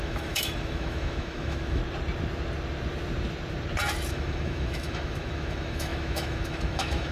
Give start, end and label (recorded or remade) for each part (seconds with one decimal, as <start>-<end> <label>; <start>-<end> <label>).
0.0-1.8 remade; 1.8-4.1 recorded; 4.1-7.1 remade